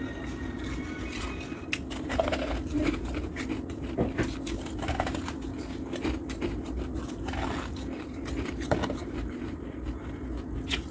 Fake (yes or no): no